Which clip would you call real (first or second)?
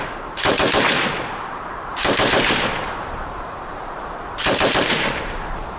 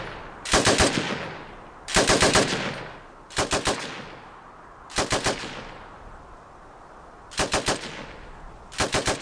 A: second